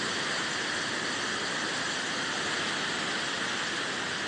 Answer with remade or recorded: recorded